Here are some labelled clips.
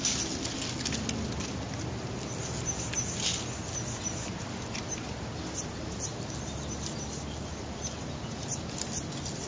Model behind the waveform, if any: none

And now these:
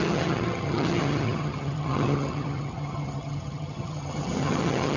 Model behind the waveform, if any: vocoder, HiFi-GAN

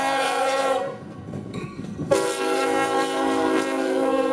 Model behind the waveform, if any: codec, SNAC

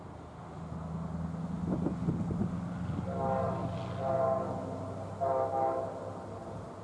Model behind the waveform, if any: none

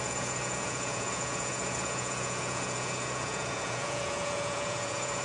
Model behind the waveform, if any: vocoder, Vocos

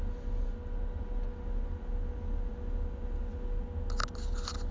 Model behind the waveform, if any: none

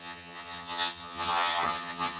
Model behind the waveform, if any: vocoder, HiFi-GAN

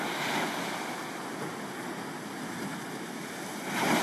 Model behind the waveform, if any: none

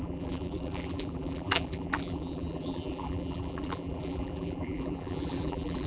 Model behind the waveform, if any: vocoder, BigVGAN v2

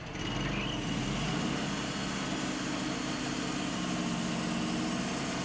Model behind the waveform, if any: none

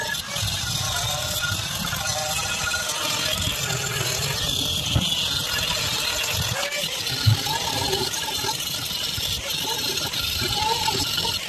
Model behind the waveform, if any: none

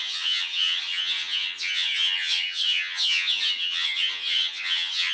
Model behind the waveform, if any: vocoder, HiFi-GAN